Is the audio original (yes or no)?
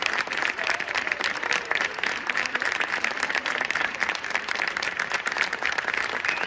no